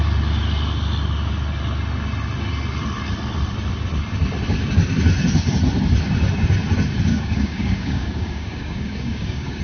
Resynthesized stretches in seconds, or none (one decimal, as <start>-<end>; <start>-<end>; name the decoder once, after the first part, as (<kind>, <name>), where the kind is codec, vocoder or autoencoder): 7.1-9.6 (codec, DAC)